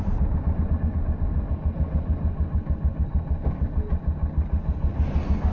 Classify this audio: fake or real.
real